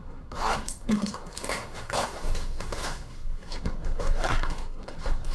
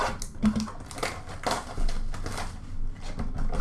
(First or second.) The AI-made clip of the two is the first